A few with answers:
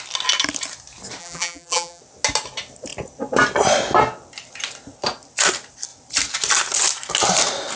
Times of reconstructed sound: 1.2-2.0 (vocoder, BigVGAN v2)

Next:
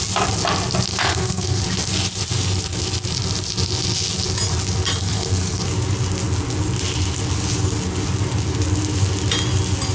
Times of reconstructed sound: 0.9-1.6 (codec, SNAC); 5.0-5.6

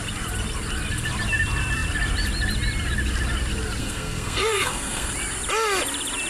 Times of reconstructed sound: 3.8-5.1 (codec, SNAC)

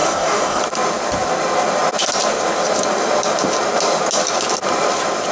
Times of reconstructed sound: 0.0-0.6 (codec, DAC)